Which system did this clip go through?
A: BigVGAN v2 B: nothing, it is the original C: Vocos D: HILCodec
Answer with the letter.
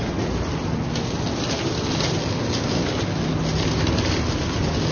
B